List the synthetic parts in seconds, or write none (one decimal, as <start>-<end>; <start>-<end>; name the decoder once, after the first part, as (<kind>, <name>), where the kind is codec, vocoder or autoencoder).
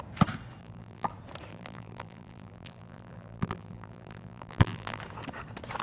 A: 0.6-1.1 (vocoder, BigVGAN v2); 1.5-5.0